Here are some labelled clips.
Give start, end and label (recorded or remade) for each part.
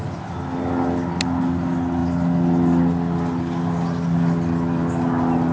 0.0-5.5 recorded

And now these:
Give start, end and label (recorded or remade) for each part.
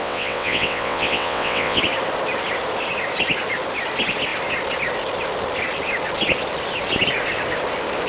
0.0-1.8 remade; 1.8-8.1 recorded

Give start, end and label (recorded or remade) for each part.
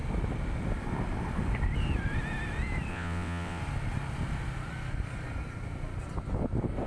0.0-2.9 recorded; 2.9-3.6 remade; 3.6-6.9 recorded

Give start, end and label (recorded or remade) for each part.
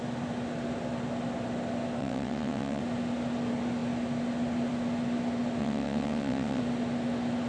0.0-2.0 recorded; 2.0-2.8 remade; 2.8-5.6 recorded; 5.6-6.6 remade; 6.6-7.5 recorded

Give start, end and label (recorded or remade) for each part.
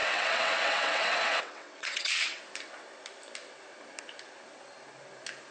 0.0-2.4 remade; 2.4-5.5 recorded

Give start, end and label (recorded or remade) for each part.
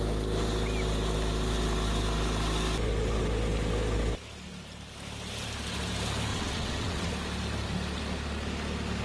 0.0-6.3 recorded; 6.3-7.1 remade; 7.1-9.0 recorded